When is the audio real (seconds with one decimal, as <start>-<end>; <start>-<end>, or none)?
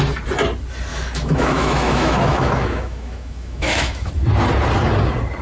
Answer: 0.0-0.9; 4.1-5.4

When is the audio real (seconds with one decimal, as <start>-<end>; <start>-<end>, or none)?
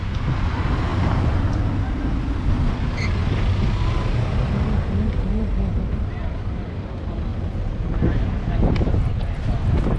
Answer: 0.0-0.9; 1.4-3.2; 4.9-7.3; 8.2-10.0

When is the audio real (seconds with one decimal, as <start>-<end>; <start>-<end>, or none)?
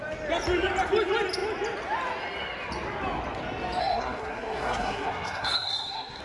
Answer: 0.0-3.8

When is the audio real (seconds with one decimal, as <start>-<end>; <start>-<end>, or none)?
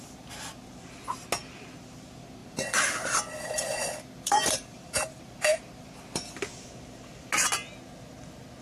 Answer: 0.0-2.4; 6.4-8.6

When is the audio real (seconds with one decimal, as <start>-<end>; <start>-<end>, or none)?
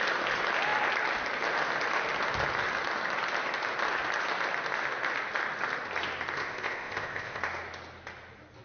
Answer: 0.0-6.4; 7.4-8.6